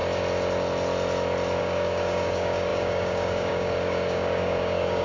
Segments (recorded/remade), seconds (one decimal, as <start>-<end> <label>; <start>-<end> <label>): 0.0-1.6 recorded; 1.6-5.0 remade